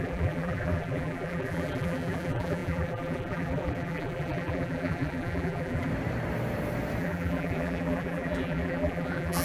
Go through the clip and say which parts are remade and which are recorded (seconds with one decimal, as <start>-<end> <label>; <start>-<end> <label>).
0.0-5.9 remade; 5.9-7.0 recorded; 7.0-9.4 remade